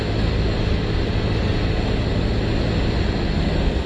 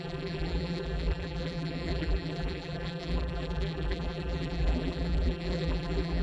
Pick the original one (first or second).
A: first